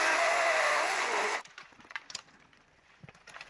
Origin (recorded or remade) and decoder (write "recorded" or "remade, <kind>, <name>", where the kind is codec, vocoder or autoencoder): remade, vocoder, Vocos